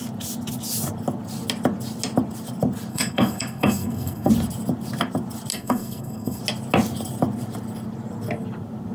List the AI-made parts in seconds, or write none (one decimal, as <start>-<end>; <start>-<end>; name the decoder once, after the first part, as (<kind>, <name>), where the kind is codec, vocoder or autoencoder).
2.9-4.3 (codec, SNAC); 5.5-6.4